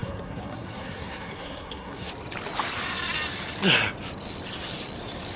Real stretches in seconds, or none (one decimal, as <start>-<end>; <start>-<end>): 2.1-5.4

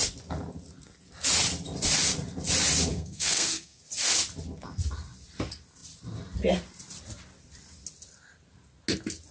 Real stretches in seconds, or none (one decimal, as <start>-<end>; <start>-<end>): 0.0-2.9; 3.8-9.3

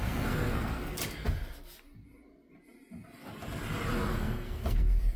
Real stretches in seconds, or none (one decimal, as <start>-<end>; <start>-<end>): 1.0-4.1

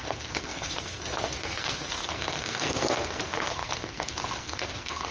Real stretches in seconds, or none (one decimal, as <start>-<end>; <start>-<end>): none